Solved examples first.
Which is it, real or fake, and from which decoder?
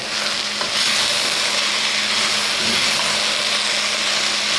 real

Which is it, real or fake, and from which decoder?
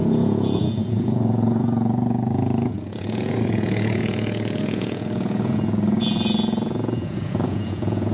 fake, vocoder, Vocos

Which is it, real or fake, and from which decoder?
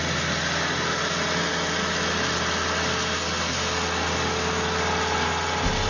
real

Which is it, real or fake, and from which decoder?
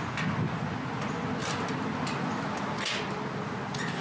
real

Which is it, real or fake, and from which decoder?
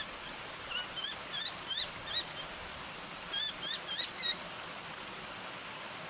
real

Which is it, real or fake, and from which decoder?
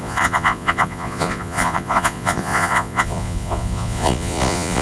fake, vocoder, Vocos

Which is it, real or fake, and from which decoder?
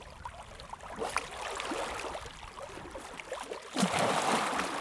real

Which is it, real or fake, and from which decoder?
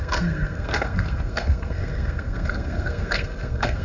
fake, codec, SNAC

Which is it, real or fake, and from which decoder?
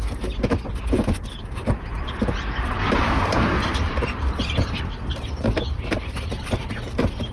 real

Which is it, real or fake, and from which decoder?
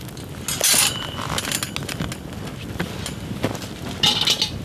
real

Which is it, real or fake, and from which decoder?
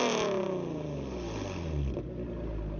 real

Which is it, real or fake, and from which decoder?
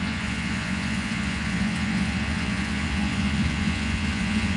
fake, vocoder, Vocos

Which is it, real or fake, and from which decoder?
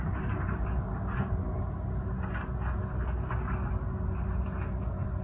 real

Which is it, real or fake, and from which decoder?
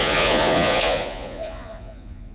fake, vocoder, Vocos